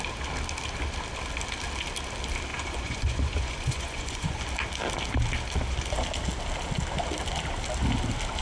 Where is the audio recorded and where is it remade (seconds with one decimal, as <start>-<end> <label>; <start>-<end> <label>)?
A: 0.0-2.5 recorded; 2.5-4.4 remade; 4.4-8.4 recorded